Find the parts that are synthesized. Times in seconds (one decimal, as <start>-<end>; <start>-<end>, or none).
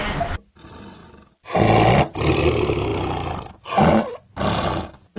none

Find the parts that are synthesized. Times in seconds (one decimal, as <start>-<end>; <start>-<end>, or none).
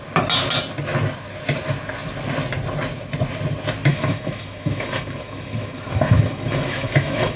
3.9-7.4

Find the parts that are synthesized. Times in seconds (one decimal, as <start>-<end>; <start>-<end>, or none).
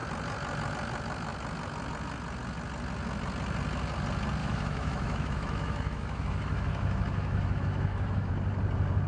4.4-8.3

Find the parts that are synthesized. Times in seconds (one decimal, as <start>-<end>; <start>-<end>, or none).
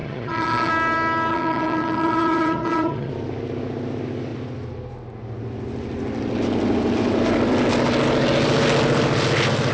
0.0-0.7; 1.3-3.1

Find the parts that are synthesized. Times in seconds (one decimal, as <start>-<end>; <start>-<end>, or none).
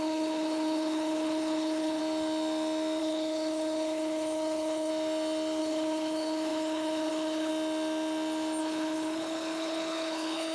0.0-2.0; 3.0-4.9; 5.6-7.5; 8.6-10.5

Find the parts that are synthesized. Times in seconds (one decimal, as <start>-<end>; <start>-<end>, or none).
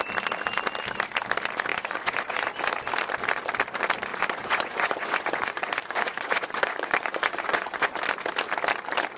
1.7-2.5; 4.1-7.9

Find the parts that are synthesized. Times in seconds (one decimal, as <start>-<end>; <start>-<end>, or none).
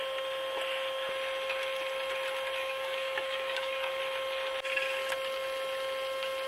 2.6-4.0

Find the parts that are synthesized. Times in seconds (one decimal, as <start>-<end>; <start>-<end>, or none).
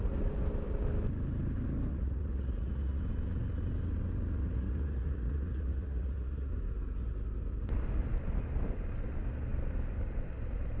1.9-3.0; 4.4-6.5